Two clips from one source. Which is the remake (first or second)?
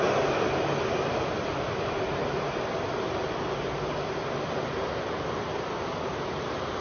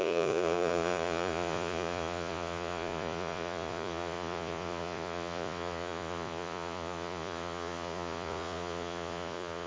second